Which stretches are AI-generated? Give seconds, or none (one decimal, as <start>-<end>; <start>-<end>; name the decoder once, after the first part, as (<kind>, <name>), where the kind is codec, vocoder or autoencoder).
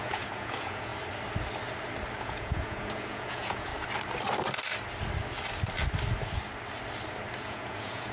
0.0-0.9 (vocoder, Vocos); 2.2-3.7; 7.4-8.1